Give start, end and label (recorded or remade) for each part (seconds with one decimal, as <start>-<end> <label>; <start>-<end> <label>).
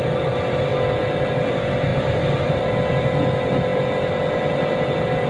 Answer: 0.0-1.9 recorded; 1.9-2.7 remade; 2.7-5.3 recorded